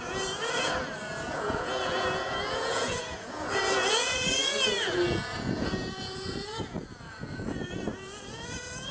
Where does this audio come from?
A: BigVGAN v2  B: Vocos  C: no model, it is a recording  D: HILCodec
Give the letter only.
B